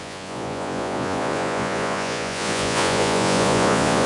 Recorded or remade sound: remade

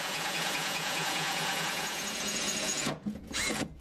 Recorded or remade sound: remade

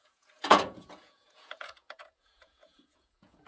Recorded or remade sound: remade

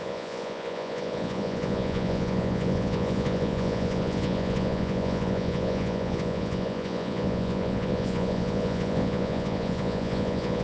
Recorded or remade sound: remade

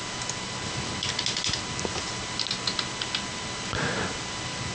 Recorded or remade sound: recorded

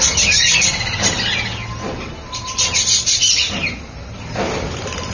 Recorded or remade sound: recorded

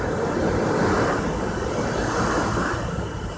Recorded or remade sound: recorded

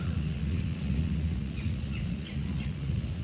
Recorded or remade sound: remade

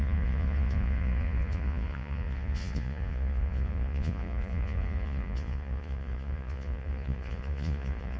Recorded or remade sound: remade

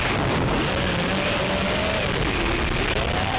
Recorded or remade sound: recorded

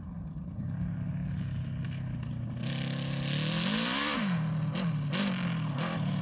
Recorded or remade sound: recorded